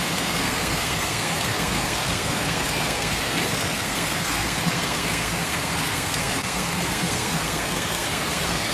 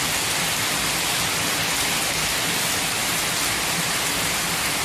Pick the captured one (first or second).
second